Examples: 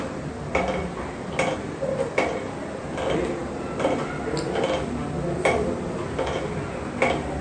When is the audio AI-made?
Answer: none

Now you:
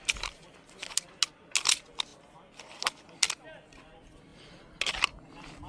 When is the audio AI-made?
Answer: none

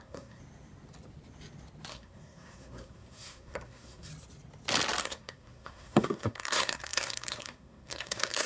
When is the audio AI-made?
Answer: 0.0-0.4; 1.9-4.1; 5.0-8.5

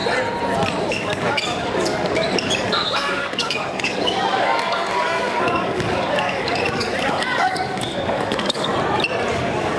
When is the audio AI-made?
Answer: 0.8-8.7; 9.3-9.8

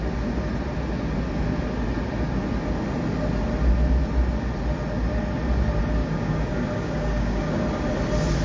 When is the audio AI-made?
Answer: 6.0-7.6